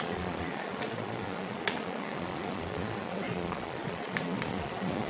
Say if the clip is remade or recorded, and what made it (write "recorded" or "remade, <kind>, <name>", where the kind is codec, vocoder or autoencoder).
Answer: remade, vocoder, Vocos